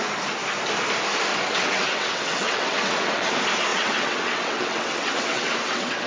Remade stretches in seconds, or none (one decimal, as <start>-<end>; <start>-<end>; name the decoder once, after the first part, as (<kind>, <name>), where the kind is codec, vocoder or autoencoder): 1.3-3.3 (vocoder, WaveNeXt); 3.7-6.1